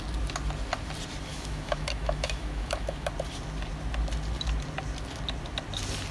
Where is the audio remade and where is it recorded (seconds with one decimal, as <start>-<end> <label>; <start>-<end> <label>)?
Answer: 0.0-1.3 recorded; 1.3-3.1 remade; 3.1-6.1 recorded